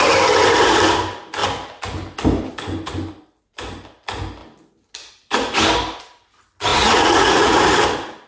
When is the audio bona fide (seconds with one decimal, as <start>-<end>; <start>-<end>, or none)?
0.0-6.7; 7.6-8.3